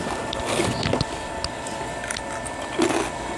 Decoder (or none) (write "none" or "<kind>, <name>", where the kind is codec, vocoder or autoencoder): none